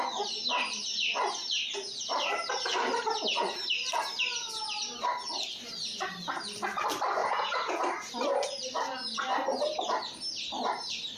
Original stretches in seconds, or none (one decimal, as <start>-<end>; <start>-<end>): 0.0-7.2; 7.8-11.2